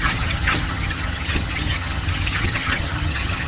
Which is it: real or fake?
fake